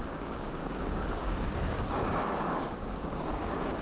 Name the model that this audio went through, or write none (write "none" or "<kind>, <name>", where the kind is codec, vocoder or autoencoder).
codec, DAC